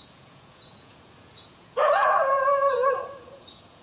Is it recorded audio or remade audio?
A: remade